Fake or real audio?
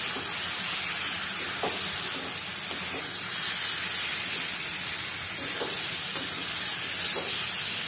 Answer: real